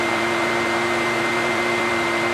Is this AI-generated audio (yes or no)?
yes